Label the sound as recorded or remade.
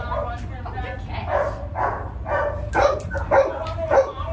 recorded